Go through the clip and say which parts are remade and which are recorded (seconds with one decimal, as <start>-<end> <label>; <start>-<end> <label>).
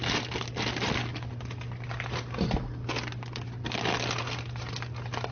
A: 0.0-5.3 recorded